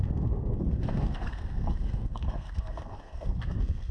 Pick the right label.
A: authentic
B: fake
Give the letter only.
B